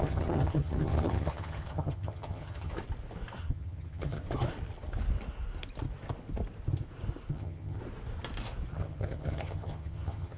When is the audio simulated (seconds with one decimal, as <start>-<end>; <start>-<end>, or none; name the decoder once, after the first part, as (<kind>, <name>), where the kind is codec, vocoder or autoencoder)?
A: 0.0-2.7 (vocoder, HiFi-GAN); 3.4-4.2; 7.3-7.8; 8.7-10.4